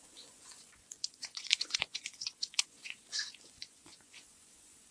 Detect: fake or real fake